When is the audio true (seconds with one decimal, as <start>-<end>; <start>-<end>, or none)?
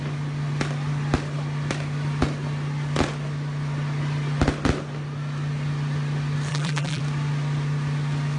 0.0-6.5; 7.0-8.4